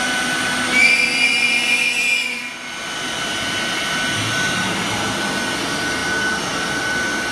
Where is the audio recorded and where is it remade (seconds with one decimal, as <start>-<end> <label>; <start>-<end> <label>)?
0.0-0.8 recorded; 0.8-2.4 remade; 2.4-7.3 recorded